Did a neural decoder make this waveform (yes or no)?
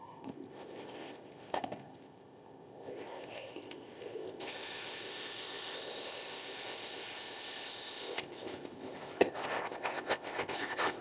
yes